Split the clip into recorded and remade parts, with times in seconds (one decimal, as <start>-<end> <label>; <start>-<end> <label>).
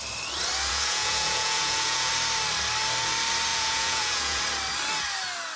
0.0-0.7 recorded; 0.7-2.1 remade; 2.1-3.5 recorded; 3.5-4.4 remade; 4.4-5.6 recorded